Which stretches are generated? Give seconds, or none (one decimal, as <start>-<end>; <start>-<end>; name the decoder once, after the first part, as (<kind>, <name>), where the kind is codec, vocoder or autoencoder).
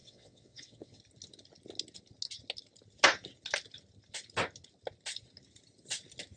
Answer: 0.0-1.0 (vocoder, WaveNeXt)